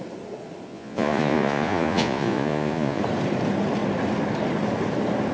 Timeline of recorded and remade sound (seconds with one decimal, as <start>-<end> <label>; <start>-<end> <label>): 0.0-0.7 recorded; 0.7-3.0 remade; 3.0-5.3 recorded